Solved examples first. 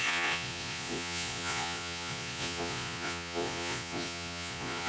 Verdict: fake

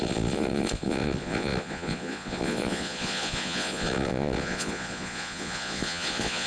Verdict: fake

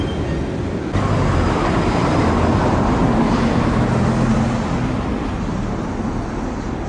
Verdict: real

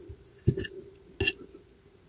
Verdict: real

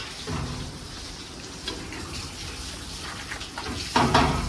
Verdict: real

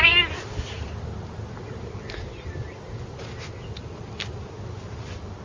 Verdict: real